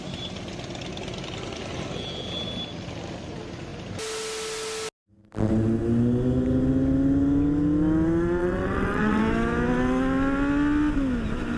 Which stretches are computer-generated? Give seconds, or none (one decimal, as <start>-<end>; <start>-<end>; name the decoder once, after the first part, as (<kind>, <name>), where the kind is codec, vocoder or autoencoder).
8.4-9.2 (vocoder, WaveNeXt)